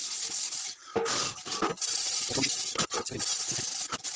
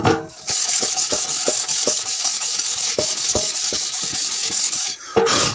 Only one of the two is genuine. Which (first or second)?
first